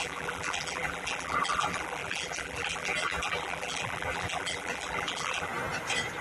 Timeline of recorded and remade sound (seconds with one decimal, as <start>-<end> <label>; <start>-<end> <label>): 0.0-5.5 remade; 5.5-6.2 recorded